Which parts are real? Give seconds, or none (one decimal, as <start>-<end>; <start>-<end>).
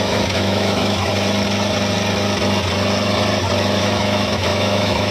1.1-3.8